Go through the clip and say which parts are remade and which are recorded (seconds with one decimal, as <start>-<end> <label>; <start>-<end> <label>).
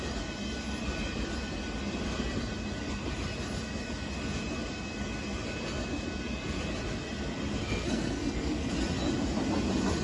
0.0-7.6 recorded; 7.6-8.7 remade; 8.7-10.0 recorded